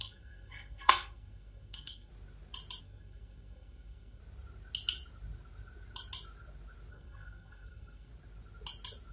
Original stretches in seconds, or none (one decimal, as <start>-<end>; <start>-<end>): 2.1-2.8; 4.2-6.9; 8.1-9.1